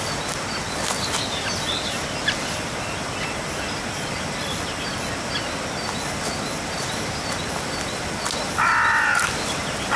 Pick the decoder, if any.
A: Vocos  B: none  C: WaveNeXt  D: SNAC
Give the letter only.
B